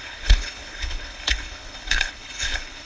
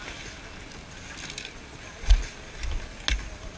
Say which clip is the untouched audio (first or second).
second